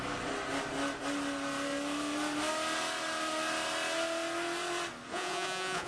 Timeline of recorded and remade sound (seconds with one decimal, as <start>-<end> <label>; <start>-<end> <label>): 0.0-5.1 recorded; 5.1-5.9 remade